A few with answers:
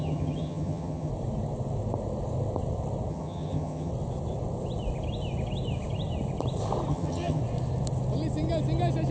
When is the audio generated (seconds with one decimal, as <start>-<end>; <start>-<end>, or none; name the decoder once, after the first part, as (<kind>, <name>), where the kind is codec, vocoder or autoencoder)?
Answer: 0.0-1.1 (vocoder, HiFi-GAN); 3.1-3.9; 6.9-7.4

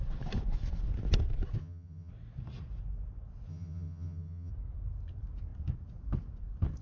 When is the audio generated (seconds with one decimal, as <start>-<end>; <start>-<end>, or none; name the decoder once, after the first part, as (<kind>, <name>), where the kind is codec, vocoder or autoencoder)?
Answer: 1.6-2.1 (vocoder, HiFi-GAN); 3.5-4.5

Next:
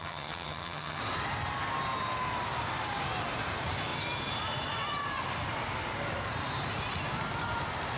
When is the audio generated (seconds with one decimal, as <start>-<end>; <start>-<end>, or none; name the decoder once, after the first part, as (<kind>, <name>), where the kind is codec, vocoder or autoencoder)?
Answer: 0.0-1.0 (vocoder, HiFi-GAN)

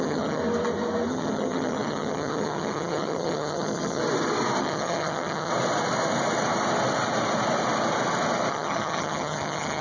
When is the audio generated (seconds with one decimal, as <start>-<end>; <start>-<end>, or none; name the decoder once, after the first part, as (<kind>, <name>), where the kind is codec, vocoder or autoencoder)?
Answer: 0.0-0.4 (vocoder, HiFi-GAN); 1.1-4.0; 4.6-5.5; 8.5-9.8